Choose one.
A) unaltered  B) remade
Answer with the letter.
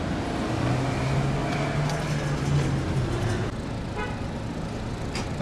A